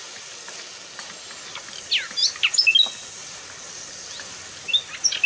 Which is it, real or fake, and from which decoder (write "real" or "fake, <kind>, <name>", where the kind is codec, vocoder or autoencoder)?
real